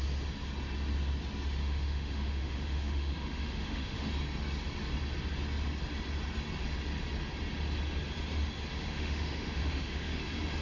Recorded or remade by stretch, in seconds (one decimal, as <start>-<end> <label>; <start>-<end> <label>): 0.0-1.6 recorded; 1.6-4.1 remade; 4.1-8.7 recorded; 8.7-10.2 remade; 10.2-10.6 recorded